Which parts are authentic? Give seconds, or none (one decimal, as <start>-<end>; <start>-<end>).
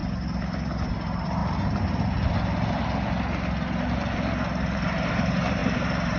0.0-0.9; 1.4-5.1